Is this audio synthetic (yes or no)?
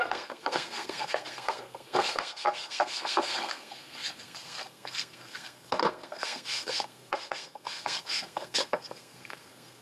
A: yes